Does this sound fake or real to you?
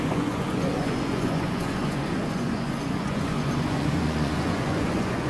fake